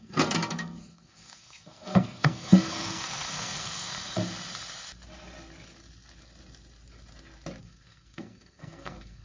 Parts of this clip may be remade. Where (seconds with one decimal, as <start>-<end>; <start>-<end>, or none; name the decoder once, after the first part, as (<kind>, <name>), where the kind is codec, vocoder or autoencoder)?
0.0-4.2 (codec, SNAC); 7.6-9.2